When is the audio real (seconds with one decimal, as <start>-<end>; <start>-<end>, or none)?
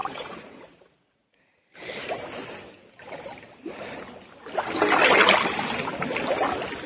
1.4-6.9